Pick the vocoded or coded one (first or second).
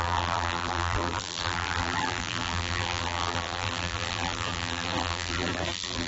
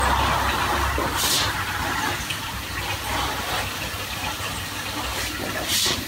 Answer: first